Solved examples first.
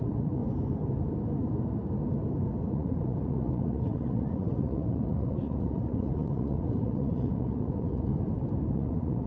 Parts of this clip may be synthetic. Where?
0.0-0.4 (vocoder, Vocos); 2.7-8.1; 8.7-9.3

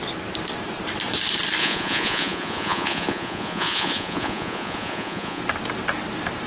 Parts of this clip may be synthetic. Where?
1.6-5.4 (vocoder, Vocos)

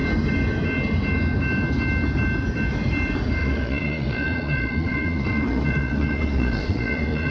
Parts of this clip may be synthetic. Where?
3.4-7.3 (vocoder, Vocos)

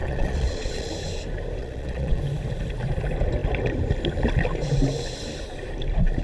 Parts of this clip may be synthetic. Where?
0.0-0.9 (vocoder, Vocos); 1.6-2.2

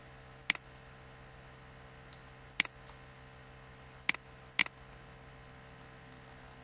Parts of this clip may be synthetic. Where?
none

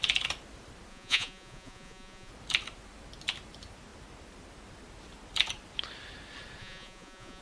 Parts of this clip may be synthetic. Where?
0.9-2.3 (vocoder, Vocos); 6.6-7.4

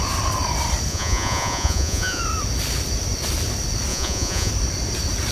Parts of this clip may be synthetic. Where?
0.9-2.2 (vocoder, Vocos); 3.9-4.5